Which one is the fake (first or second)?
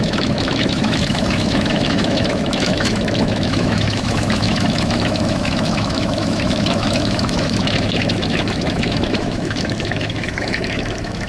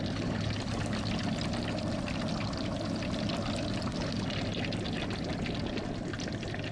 first